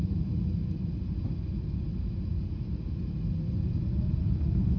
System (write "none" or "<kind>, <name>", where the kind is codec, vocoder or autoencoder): none